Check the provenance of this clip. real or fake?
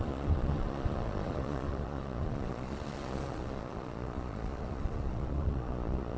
fake